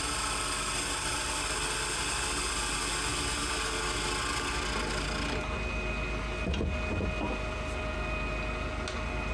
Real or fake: real